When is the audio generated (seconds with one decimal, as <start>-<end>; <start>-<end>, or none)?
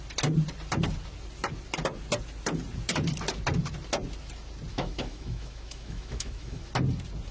4.7-6.7